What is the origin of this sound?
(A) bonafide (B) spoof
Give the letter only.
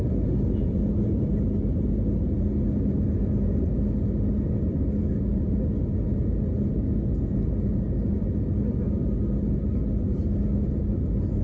A